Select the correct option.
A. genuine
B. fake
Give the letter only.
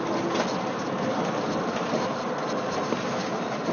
A